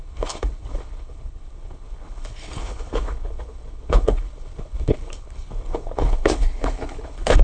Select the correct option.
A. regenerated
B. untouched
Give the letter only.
A